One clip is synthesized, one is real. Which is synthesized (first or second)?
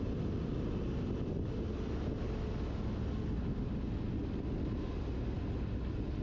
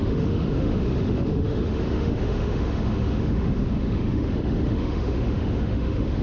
second